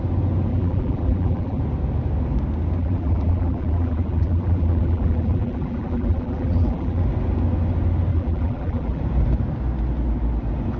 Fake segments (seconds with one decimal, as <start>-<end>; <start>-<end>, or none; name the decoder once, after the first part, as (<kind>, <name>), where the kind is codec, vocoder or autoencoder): 0.5-1.6 (vocoder, BigVGAN v2); 2.8-7.0; 8.1-9.0